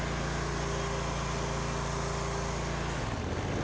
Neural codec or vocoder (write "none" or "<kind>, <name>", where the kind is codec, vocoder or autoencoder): none